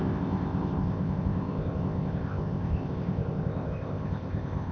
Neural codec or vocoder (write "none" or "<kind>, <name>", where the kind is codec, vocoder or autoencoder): codec, ZipCodec